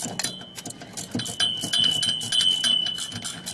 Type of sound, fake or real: real